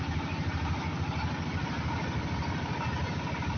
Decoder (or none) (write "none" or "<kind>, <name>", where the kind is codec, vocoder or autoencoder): none